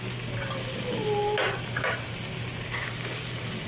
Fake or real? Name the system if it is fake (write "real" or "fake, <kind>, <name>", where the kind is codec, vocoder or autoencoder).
real